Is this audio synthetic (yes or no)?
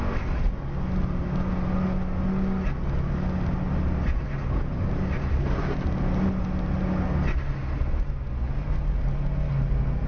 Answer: no